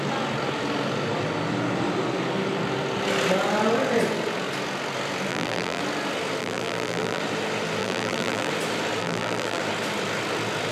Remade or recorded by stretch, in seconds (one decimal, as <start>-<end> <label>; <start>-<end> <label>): 0.0-5.3 recorded; 5.3-5.8 remade; 5.8-6.4 recorded; 6.4-7.2 remade; 7.2-7.8 recorded; 7.8-8.5 remade; 8.5-9.0 recorded; 9.0-9.6 remade; 9.6-10.7 recorded